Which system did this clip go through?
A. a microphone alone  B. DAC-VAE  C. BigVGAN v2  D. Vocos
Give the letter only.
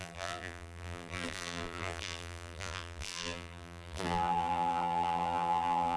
C